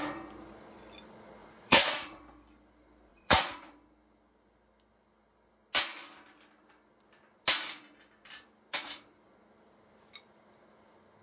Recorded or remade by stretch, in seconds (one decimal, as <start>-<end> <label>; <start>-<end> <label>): 0.0-1.4 recorded; 1.4-2.2 remade; 2.2-3.1 recorded; 3.1-3.7 remade; 3.7-11.2 recorded